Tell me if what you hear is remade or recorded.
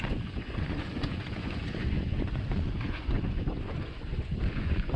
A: remade